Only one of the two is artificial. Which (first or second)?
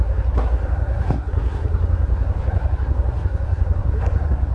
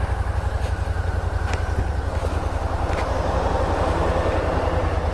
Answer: first